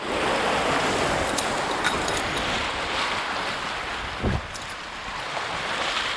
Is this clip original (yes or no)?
yes